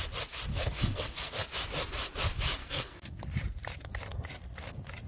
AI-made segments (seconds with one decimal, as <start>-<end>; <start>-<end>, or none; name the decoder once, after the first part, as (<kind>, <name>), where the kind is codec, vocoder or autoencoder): 0.5-1.3 (codec, SNAC); 2.6-3.2